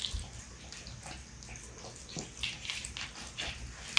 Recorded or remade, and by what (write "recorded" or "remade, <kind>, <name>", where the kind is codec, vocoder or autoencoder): recorded